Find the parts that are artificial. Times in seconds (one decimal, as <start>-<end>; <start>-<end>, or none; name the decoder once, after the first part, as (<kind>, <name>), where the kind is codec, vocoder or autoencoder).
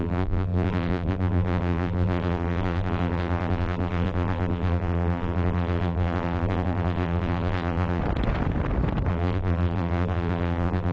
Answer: 0.0-8.0 (vocoder, BigVGAN v2); 9.1-10.9